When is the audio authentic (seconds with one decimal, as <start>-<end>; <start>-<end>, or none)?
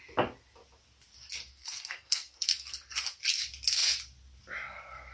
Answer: 0.0-1.5; 3.2-5.1